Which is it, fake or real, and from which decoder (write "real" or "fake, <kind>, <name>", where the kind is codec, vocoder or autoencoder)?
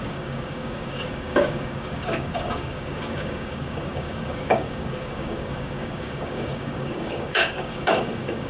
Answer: fake, codec, DAC